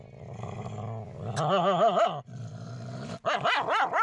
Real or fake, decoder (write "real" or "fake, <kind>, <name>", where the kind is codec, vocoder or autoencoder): real